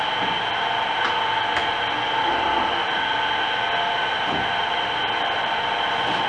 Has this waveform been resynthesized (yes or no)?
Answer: no